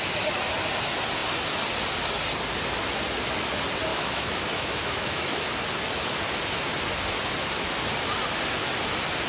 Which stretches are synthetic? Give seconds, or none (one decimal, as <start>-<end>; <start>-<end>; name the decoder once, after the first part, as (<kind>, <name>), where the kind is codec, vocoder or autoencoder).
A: 3.9-5.5 (autoencoder, DAC-VAE)